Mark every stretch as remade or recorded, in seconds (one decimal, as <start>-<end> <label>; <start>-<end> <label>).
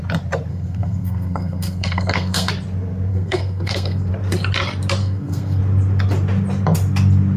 0.0-0.5 recorded; 0.5-2.5 remade; 2.5-3.1 recorded; 3.1-4.1 remade; 4.1-5.0 recorded; 5.0-5.6 remade; 5.6-7.4 recorded